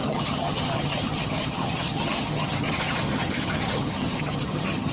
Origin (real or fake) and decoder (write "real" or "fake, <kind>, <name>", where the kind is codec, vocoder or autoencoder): fake, vocoder, HiFi-GAN